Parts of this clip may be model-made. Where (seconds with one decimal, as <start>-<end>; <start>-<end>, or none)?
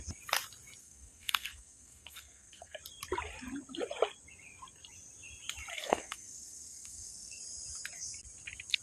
0.8-2.8; 5.7-7.4